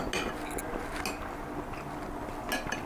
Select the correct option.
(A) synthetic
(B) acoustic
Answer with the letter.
B